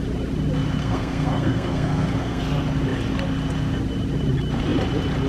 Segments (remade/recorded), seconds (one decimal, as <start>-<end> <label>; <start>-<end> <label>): 0.0-0.8 recorded; 0.8-2.4 remade; 2.4-5.3 recorded